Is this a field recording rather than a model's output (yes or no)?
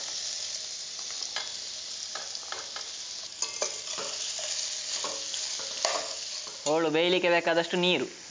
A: yes